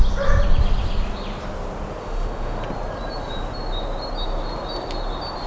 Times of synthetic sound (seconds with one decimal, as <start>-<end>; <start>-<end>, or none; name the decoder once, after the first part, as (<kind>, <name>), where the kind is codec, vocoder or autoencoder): 2.0-2.6 (autoencoder, DAC-VAE)